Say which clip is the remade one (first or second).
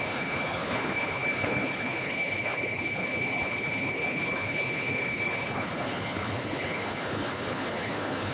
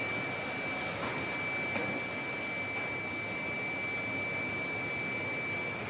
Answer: first